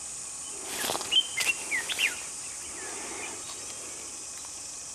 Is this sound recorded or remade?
recorded